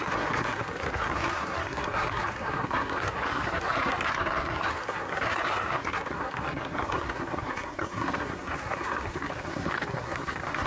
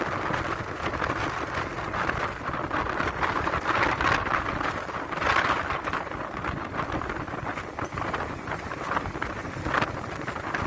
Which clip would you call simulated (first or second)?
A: first